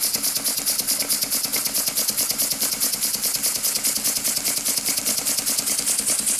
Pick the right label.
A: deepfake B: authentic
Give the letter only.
B